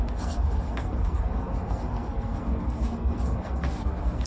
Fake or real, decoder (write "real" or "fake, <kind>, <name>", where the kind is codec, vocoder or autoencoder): fake, codec, SNAC